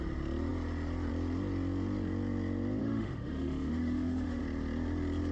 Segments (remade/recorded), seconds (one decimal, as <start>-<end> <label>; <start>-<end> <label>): 0.0-2.8 recorded; 2.8-4.4 remade; 4.4-5.3 recorded